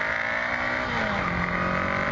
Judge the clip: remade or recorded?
recorded